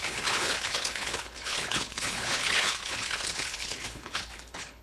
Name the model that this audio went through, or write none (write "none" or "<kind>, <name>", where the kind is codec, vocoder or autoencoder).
codec, HILCodec